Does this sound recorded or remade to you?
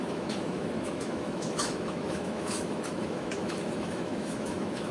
remade